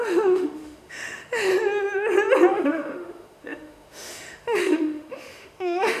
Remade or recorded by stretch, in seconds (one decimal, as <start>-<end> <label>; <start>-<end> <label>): 0.0-1.5 remade; 1.5-2.5 recorded; 2.5-6.0 remade